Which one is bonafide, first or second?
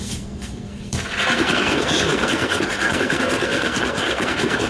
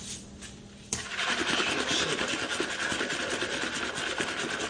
second